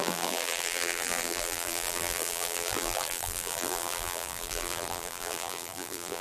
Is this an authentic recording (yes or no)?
no